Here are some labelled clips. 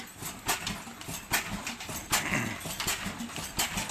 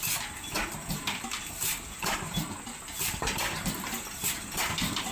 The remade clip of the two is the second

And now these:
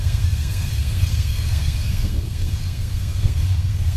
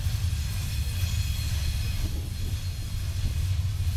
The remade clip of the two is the first